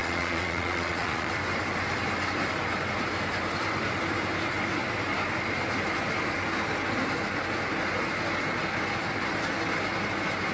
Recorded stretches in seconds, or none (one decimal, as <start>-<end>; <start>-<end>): 1.3-10.5